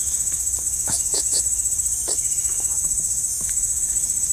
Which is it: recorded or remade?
remade